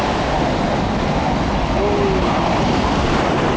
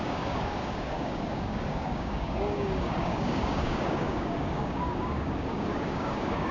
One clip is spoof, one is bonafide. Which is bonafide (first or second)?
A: first